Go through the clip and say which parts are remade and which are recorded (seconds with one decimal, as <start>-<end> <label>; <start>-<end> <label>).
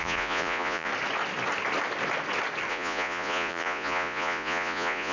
0.0-0.9 remade; 0.9-2.7 recorded; 2.7-5.1 remade